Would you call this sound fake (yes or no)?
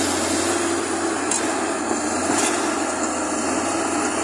no